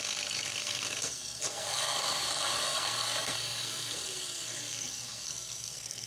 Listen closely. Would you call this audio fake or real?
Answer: fake